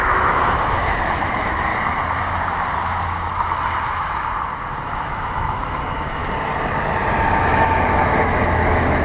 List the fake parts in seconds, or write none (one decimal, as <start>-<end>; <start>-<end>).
0.0-1.7; 5.0-6.2; 7.3-9.0